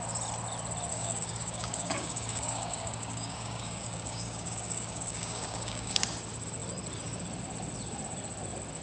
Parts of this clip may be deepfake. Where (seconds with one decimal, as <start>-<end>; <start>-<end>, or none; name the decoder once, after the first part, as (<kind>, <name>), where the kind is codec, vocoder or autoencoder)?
0.9-6.0 (codec, DAC)